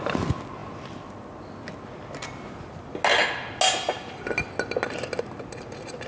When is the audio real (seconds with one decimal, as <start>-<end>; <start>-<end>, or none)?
0.0-6.1